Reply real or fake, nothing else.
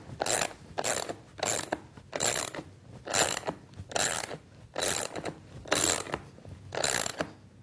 real